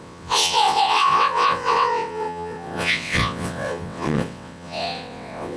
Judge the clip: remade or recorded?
remade